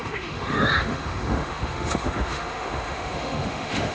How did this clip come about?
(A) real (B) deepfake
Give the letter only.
B